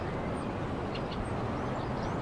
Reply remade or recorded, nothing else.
recorded